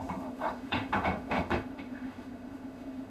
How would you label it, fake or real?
fake